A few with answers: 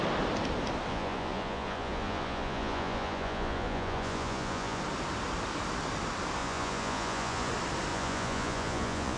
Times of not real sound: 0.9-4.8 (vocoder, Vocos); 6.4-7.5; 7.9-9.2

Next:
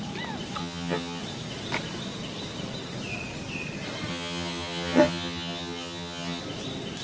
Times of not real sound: 0.6-1.2 (vocoder, HiFi-GAN); 4.1-6.4

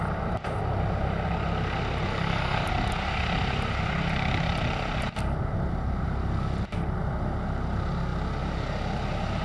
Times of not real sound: 2.1-2.7 (codec, DAC)

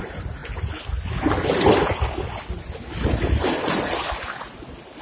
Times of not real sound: none

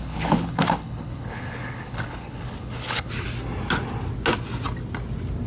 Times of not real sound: 0.0-3.1 (codec, HILCodec)